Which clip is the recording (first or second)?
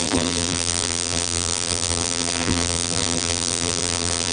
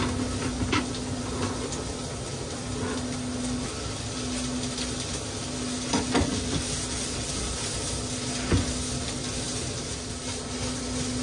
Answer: second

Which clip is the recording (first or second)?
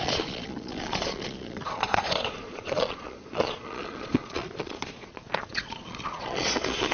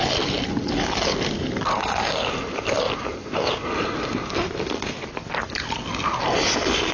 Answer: second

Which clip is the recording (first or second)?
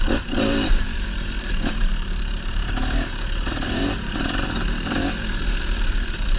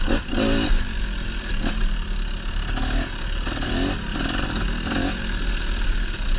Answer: second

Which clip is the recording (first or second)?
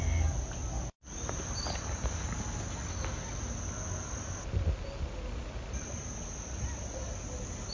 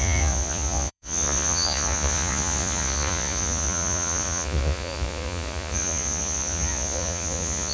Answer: first